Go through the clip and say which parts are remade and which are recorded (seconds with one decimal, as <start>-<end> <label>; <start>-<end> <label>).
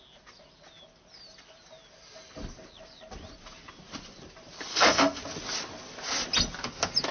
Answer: 0.0-4.7 recorded; 4.7-5.2 remade; 5.2-7.1 recorded